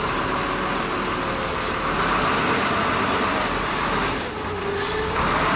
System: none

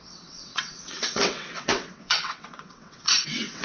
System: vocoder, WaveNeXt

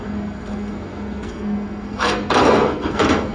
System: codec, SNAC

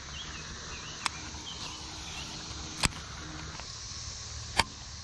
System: none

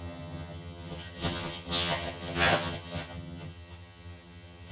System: vocoder, HiFi-GAN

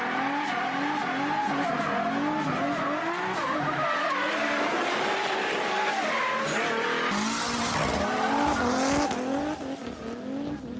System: none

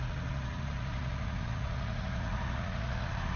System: vocoder, Vocos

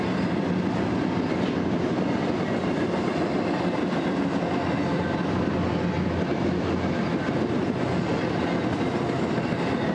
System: none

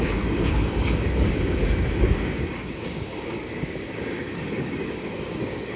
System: codec, DAC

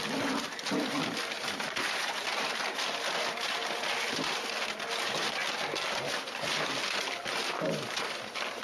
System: none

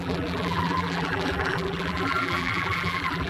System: vocoder, BigVGAN v2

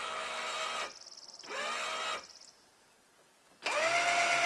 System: none